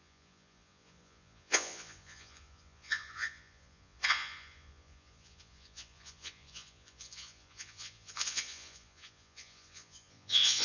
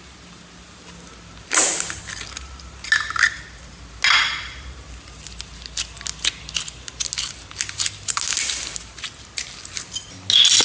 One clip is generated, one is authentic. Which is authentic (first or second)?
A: second